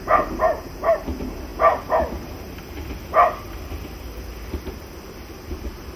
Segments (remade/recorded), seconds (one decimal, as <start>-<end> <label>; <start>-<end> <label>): 0.0-6.0 recorded